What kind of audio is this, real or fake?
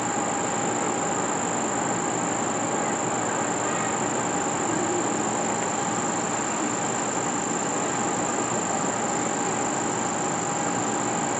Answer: real